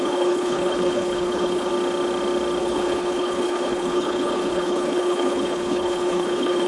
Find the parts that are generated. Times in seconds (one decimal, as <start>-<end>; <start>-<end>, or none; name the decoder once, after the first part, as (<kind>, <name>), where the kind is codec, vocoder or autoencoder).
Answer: 0.0-1.7 (codec, HILCodec); 2.6-6.7